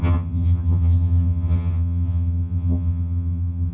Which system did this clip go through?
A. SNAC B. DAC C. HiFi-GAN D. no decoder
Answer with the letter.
C